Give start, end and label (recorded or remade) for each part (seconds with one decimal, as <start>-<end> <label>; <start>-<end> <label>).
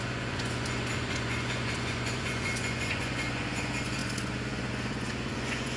0.0-5.8 remade